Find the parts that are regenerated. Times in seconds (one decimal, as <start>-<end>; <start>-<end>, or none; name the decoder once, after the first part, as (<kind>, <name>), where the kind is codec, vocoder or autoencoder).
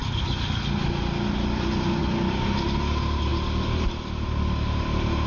none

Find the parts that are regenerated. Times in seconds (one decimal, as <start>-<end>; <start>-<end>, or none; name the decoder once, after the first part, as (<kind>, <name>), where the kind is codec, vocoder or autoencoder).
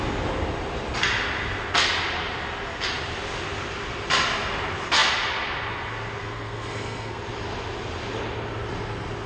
6.2-7.2 (codec, SNAC)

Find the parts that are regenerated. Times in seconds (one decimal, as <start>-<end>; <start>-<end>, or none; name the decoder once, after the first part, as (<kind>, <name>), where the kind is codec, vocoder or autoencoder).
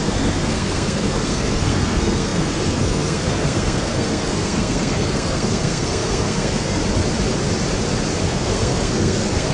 0.0-6.8 (codec, SNAC); 8.2-9.5